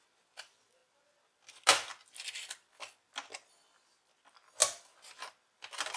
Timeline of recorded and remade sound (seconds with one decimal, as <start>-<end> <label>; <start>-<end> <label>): 0.0-6.0 recorded